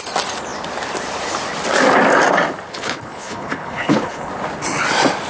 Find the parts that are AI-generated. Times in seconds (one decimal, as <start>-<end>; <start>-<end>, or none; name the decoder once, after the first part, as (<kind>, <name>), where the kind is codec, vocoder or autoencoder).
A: 2.7-4.3 (codec, HILCodec)